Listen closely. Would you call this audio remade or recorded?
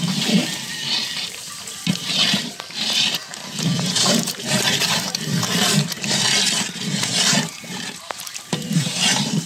remade